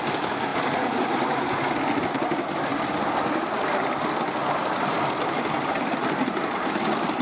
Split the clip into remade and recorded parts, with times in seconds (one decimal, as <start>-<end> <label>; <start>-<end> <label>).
0.0-0.5 remade; 0.5-1.9 recorded; 1.9-2.7 remade; 2.7-5.7 recorded; 5.7-7.2 remade